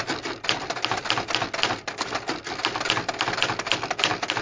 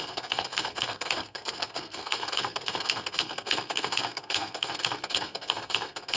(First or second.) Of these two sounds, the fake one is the second